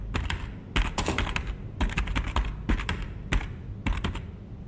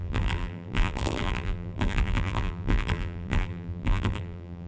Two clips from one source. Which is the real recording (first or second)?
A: first